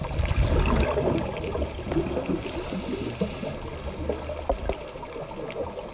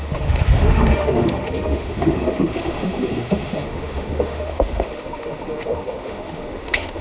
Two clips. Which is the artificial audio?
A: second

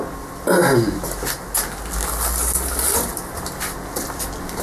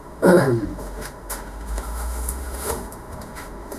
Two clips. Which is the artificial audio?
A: second